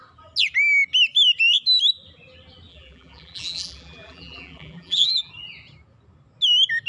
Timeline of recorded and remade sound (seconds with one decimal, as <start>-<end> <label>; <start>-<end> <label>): 0.0-2.7 recorded; 2.7-5.3 remade; 5.3-6.9 recorded